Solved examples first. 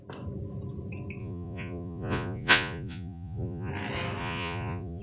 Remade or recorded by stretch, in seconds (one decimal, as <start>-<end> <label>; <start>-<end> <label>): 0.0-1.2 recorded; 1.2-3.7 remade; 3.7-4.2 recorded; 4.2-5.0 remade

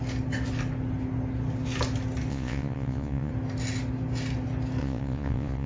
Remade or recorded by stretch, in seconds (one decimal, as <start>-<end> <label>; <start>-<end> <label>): 0.0-2.3 recorded; 2.3-3.3 remade; 3.3-4.8 recorded; 4.8-5.7 remade

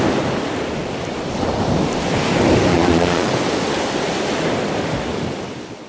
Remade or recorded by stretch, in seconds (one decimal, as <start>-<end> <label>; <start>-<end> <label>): 0.0-2.7 recorded; 2.7-3.3 remade; 3.3-5.9 recorded

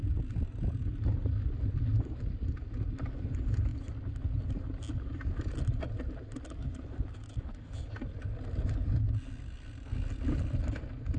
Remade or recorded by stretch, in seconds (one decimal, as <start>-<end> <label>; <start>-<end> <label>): 0.0-6.6 recorded; 6.6-7.1 remade; 7.1-11.2 recorded

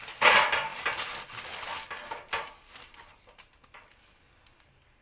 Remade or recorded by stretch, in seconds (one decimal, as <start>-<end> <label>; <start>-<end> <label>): 0.0-5.0 recorded